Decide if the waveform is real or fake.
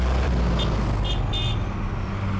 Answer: real